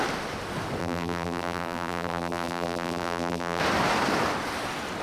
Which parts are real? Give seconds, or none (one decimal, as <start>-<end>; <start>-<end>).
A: 0.0-0.8; 3.6-5.0